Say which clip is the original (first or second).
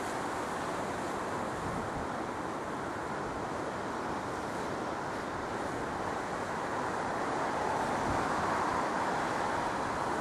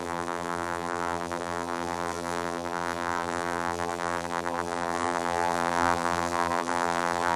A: first